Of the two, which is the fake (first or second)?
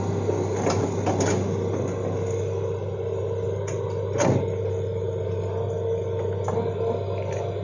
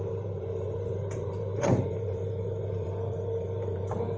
second